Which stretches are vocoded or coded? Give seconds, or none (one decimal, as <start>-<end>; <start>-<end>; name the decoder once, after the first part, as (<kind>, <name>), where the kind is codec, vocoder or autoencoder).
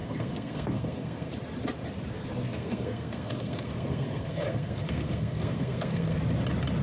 0.0-1.3 (codec, SNAC); 2.1-6.2